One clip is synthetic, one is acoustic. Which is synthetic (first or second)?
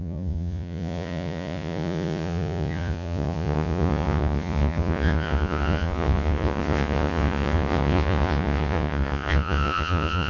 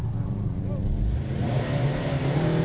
first